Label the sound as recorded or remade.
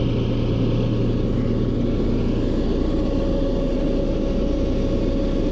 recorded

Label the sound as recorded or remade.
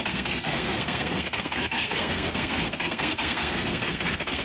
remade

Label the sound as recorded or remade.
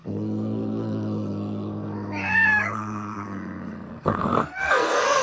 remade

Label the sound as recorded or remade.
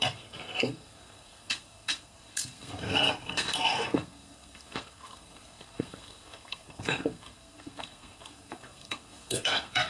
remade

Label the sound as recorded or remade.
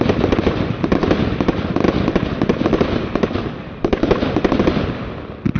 recorded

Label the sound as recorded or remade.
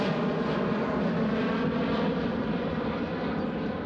recorded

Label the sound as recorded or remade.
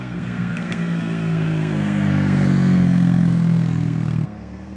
remade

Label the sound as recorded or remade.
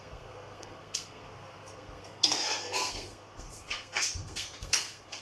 remade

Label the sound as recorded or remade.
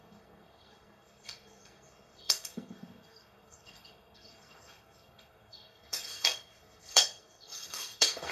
remade